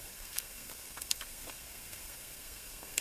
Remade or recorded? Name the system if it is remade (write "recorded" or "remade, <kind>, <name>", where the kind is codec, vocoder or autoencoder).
remade, codec, SNAC